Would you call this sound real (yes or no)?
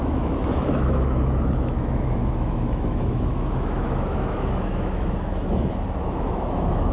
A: no